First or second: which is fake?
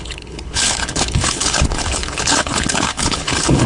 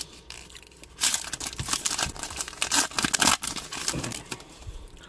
first